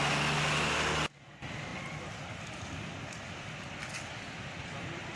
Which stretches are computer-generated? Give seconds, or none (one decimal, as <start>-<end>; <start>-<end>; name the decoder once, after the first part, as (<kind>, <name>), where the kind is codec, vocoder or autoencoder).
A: none